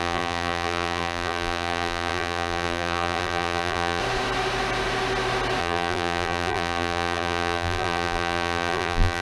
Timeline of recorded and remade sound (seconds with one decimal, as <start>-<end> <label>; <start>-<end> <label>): 0.0-4.0 remade; 4.0-5.6 recorded; 5.6-9.2 remade